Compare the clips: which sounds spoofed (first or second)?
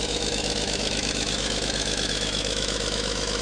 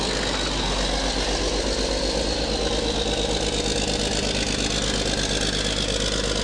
first